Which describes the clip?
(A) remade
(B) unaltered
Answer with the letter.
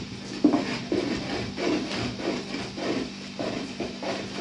B